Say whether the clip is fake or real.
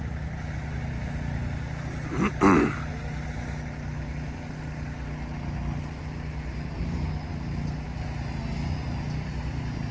real